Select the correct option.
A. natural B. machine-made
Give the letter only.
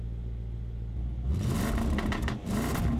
A